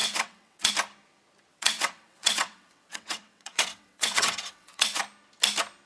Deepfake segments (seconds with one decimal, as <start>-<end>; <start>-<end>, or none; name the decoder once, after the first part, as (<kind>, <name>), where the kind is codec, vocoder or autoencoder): 0.0-0.7 (vocoder, WaveNeXt); 1.5-5.0